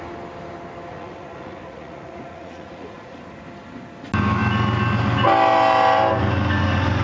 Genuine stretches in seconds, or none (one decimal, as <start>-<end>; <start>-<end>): 0.0-0.9; 3.2-7.0